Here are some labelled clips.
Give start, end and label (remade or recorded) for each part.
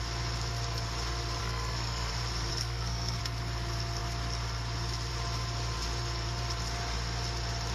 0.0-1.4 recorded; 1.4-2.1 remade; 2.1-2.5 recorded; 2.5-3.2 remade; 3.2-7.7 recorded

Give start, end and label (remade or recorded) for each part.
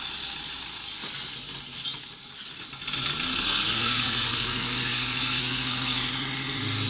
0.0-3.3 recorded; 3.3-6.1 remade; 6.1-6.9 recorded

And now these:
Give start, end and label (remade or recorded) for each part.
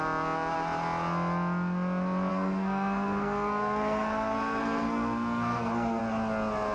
0.0-2.3 recorded; 2.3-6.0 remade; 6.0-6.7 recorded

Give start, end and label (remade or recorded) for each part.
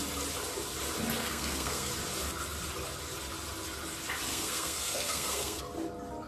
0.0-1.2 recorded; 1.2-1.9 remade; 1.9-4.3 recorded; 4.3-5.6 remade; 5.6-6.3 recorded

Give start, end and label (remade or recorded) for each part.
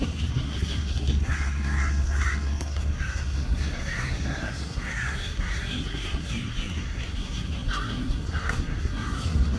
0.0-9.6 remade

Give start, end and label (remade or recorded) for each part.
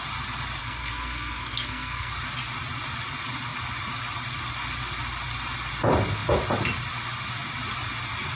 0.0-0.6 recorded; 0.6-2.1 remade; 2.1-8.4 recorded